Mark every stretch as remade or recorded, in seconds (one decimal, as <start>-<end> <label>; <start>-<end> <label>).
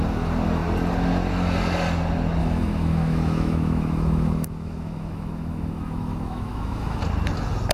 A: 0.0-2.4 recorded; 2.4-7.0 remade; 7.0-7.7 recorded